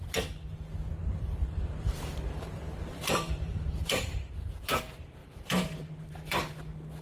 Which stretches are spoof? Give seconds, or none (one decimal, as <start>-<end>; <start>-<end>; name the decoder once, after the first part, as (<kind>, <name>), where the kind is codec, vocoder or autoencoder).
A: 1.0-4.8 (vocoder, BigVGAN v2); 5.2-6.5